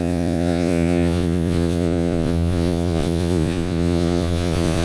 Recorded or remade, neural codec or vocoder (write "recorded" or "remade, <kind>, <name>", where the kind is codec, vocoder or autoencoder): remade, vocoder, Vocos